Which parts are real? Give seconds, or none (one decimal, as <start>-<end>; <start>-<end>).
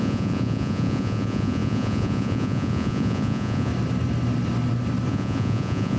3.7-5.1